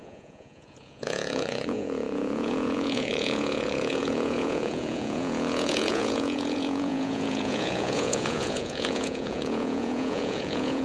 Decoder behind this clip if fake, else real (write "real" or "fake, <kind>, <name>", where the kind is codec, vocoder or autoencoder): fake, vocoder, Vocos